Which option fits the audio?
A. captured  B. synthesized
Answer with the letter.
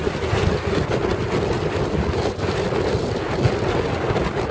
A